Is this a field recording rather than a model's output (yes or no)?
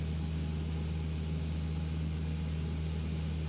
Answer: yes